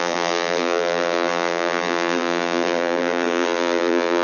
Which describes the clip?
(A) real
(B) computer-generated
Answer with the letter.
B